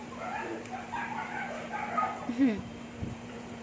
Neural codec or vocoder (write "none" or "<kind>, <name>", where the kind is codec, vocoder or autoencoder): vocoder, BigVGAN v2